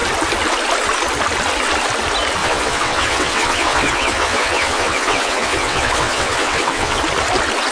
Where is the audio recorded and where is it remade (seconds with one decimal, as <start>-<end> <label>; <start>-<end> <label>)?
0.0-2.4 recorded; 2.4-7.0 remade; 7.0-7.7 recorded